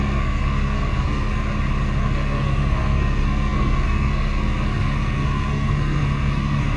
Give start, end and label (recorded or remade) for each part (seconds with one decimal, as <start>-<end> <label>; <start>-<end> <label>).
0.0-1.4 remade; 1.4-2.0 recorded; 2.0-6.8 remade